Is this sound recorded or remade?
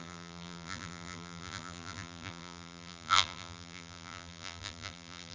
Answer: remade